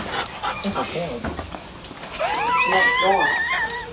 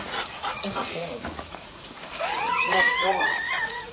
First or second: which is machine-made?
second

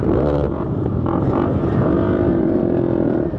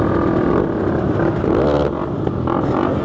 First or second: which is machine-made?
first